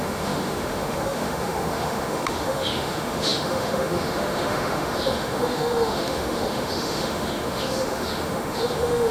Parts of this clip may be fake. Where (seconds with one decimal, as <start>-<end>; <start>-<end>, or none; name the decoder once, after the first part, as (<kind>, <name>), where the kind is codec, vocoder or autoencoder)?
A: 0.0-9.1 (autoencoder, DAC-VAE)